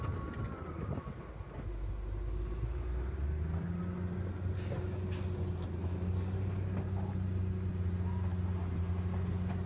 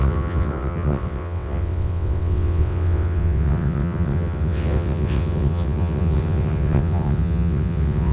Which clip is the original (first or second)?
first